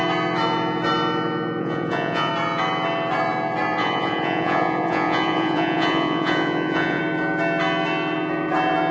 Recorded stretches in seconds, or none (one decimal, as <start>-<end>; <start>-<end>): 0.0-1.6; 2.3-3.8; 7.0-8.9